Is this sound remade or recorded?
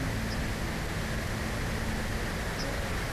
recorded